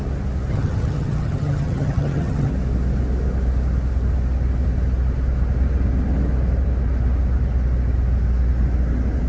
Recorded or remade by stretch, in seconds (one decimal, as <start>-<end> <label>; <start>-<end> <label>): 0.0-0.5 recorded; 0.5-2.5 remade; 2.5-9.3 recorded